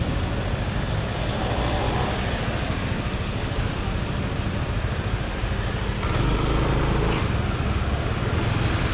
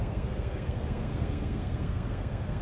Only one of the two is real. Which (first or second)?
first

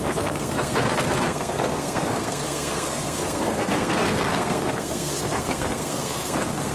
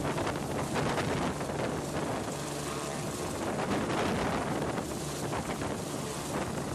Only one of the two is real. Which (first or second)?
second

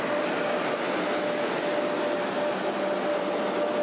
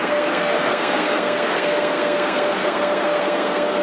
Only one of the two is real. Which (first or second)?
first